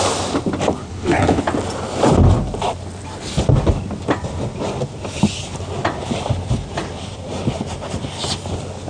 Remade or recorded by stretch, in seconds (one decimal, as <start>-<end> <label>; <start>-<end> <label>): 0.0-0.8 recorded; 0.8-1.4 remade; 1.4-8.9 recorded